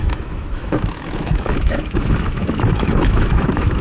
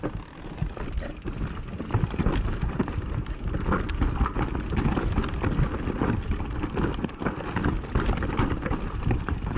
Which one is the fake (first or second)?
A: first